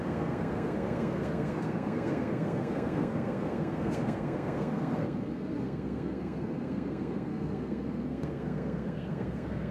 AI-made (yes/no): yes